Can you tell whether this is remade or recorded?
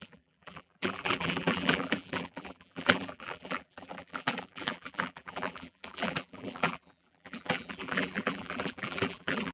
remade